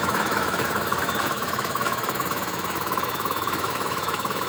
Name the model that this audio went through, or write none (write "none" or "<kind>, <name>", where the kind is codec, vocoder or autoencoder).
autoencoder, DAC-VAE